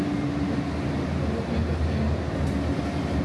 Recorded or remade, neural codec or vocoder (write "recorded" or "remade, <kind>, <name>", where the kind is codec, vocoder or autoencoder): recorded